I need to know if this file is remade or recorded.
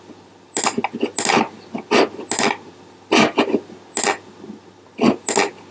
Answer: recorded